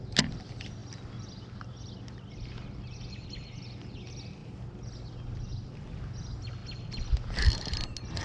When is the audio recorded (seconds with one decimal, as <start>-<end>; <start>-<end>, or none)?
0.0-8.2